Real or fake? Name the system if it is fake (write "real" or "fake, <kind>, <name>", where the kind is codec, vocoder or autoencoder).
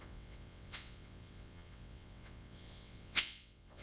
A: fake, vocoder, WaveNeXt